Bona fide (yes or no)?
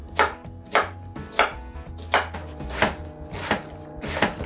yes